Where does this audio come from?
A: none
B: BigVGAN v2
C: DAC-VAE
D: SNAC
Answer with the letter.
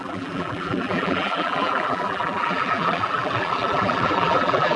B